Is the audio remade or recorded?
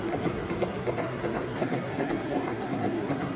remade